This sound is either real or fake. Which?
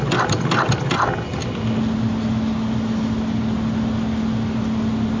real